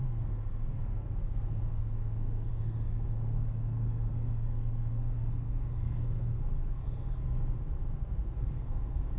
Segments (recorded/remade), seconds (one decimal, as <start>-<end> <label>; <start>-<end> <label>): 0.0-9.2 remade